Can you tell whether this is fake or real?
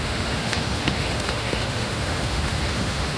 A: fake